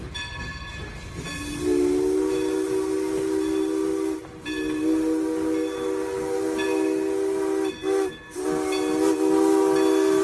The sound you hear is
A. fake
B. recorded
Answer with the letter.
B